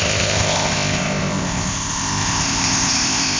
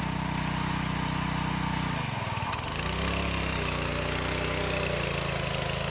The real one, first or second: second